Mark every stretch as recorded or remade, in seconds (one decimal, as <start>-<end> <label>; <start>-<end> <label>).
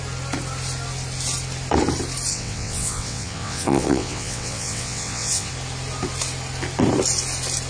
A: 0.0-2.3 recorded; 2.3-5.5 remade; 5.5-7.7 recorded